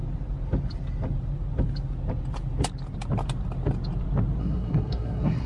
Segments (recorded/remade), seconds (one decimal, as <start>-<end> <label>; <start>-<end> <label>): 0.0-4.4 recorded; 4.4-5.5 remade

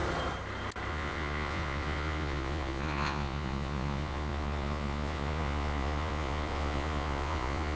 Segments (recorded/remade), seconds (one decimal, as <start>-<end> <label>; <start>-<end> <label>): 0.0-0.9 recorded; 0.9-7.8 remade

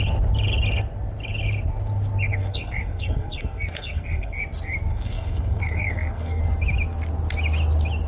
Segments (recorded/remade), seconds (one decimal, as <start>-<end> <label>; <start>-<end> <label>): 0.0-2.3 recorded; 2.3-4.4 remade; 4.4-4.9 recorded; 4.9-6.4 remade; 6.4-8.1 recorded

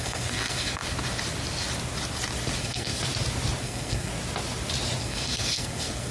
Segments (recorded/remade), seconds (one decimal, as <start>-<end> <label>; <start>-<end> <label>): 0.0-0.8 remade; 0.8-2.6 recorded; 2.6-3.0 remade; 3.0-3.6 recorded; 3.6-4.1 remade; 4.1-5.0 recorded; 5.0-6.1 remade

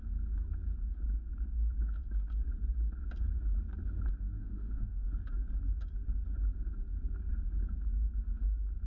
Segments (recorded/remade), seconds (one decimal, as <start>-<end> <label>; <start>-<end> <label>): 0.0-4.4 recorded; 4.4-5.1 remade; 5.1-8.9 recorded

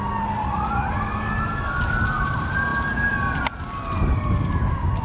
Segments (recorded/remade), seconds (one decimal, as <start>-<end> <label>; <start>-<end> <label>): 0.0-0.4 recorded; 0.4-0.9 remade; 0.9-5.0 recorded

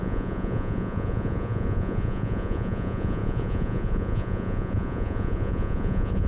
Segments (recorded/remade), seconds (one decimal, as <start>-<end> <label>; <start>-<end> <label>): 0.0-6.3 remade